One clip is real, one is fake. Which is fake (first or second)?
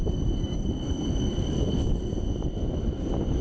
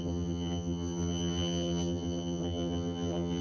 second